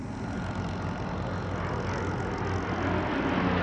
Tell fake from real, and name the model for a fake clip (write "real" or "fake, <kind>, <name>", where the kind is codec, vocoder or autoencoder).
real